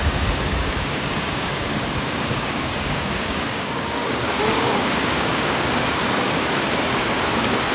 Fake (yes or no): yes